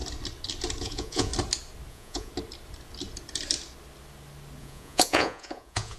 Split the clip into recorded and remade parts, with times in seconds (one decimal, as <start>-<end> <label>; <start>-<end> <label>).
0.0-0.8 recorded; 0.8-1.3 remade; 1.3-1.9 recorded; 1.9-2.3 remade; 2.3-4.6 recorded; 4.6-6.0 remade